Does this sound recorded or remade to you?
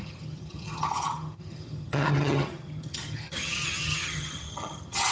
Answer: remade